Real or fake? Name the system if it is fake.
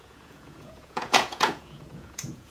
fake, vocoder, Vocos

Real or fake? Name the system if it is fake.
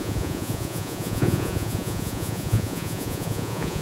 fake, vocoder, Vocos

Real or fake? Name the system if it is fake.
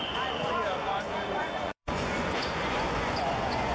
fake, vocoder, Vocos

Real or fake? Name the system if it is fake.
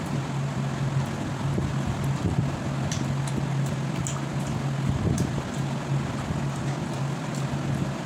real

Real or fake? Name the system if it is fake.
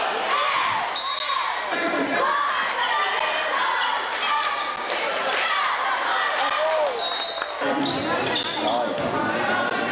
real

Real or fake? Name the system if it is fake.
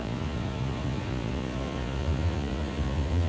fake, vocoder, Vocos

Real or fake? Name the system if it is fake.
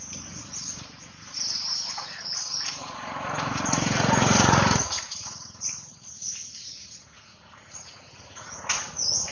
fake, vocoder, Vocos